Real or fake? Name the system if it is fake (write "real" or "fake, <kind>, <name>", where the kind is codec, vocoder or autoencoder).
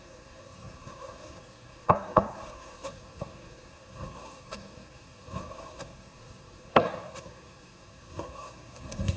fake, codec, SNAC